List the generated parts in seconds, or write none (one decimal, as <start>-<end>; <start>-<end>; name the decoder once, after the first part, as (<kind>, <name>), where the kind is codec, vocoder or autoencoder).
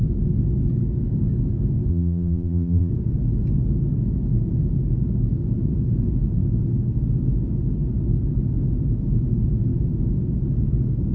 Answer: 1.9-2.9 (vocoder, BigVGAN v2)